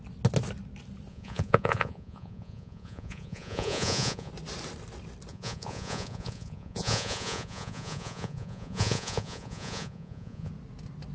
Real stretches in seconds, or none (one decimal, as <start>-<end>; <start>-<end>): 0.0-1.1; 4.3-5.3; 10.5-11.1